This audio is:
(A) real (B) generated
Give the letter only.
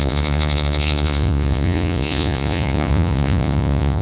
B